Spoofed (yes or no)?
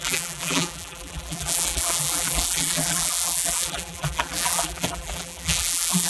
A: yes